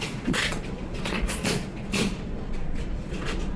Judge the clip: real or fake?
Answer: fake